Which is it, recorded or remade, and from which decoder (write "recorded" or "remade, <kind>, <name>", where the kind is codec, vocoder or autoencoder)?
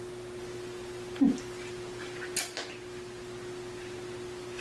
recorded